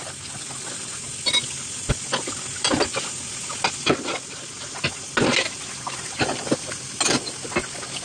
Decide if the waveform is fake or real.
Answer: real